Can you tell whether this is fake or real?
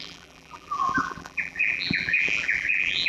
fake